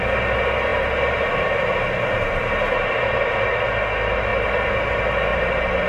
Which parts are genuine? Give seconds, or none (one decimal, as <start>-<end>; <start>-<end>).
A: 0.0-5.3